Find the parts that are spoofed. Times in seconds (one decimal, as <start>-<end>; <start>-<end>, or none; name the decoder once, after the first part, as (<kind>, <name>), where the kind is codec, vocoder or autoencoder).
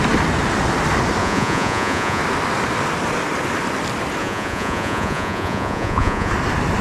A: 1.2-2.2 (vocoder, Vocos); 4.2-6.3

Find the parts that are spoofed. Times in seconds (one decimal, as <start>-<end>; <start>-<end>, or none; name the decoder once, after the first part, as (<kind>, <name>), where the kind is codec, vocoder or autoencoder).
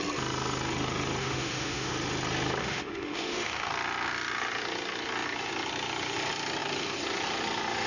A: 1.2-1.9 (autoencoder, DAC-VAE); 2.6-3.7